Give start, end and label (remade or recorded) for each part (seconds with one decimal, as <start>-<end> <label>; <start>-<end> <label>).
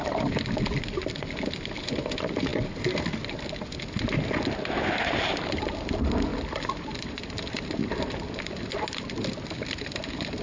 0.0-10.4 recorded